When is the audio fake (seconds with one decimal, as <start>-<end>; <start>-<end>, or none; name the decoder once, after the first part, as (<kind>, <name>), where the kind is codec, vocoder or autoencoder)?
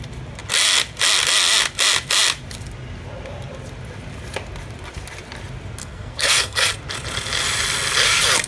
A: 5.8-6.7 (codec, SNAC)